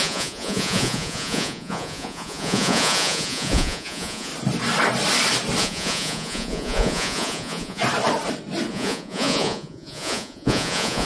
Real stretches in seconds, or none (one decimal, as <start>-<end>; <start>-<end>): 4.3-5.6; 7.8-8.7